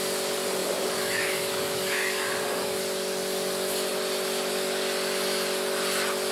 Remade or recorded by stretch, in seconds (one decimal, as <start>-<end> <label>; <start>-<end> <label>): 0.0-0.6 recorded; 0.6-2.8 remade; 2.8-6.3 recorded